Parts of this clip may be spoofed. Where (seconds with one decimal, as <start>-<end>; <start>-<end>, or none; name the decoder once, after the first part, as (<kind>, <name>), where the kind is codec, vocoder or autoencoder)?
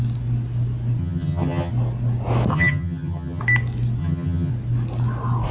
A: 1.0-1.7 (vocoder, HiFi-GAN); 2.5-3.4; 4.0-4.5